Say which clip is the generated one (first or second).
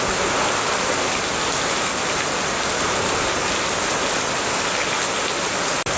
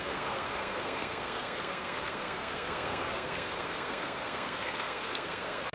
second